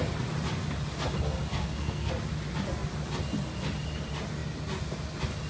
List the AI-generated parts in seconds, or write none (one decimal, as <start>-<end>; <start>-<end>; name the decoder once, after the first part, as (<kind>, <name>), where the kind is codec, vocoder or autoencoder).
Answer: 1.5-2.1 (codec, SNAC)